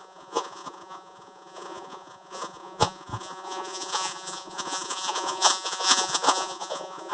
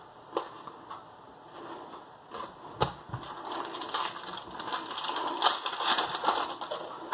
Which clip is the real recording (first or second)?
second